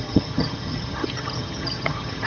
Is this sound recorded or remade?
remade